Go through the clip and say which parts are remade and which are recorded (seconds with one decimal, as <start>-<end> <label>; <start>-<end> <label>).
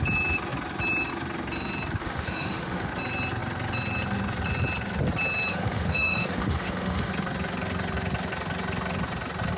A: 0.0-2.0 recorded; 2.0-2.9 remade; 2.9-5.5 recorded; 5.5-7.1 remade; 7.1-9.6 recorded